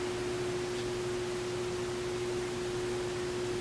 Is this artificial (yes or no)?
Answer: no